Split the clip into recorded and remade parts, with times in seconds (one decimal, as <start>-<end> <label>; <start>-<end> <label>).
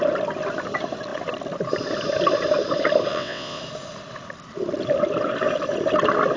0.0-3.1 recorded; 3.1-3.6 remade; 3.6-6.4 recorded